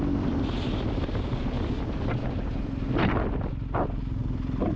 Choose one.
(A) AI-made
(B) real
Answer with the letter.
B